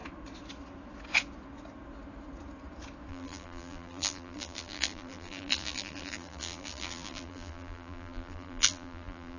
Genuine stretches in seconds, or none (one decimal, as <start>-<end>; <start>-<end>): 0.0-3.1